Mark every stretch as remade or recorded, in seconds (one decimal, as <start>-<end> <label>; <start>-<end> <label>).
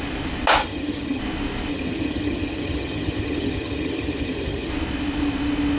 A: 0.0-0.6 recorded; 0.6-1.2 remade; 1.2-1.7 recorded; 1.7-4.7 remade; 4.7-5.8 recorded